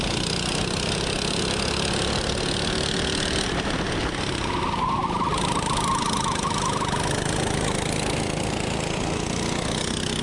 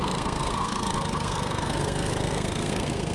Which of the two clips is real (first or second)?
first